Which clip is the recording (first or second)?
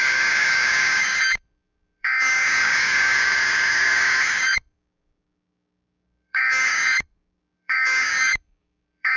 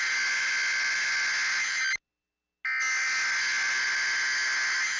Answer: second